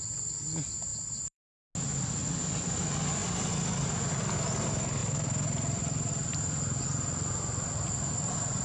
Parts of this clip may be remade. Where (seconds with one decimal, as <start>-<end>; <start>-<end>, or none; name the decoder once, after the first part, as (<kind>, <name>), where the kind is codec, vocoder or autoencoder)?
0.9-1.5 (vocoder, BigVGAN v2); 3.2-4.1; 5.0-6.1